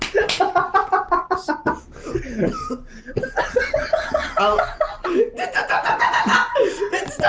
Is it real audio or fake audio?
real